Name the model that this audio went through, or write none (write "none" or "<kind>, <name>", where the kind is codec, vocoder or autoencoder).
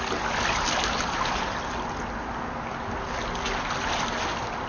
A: none